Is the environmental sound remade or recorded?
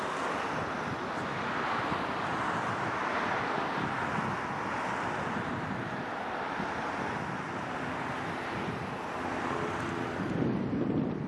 recorded